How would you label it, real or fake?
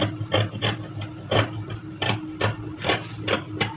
real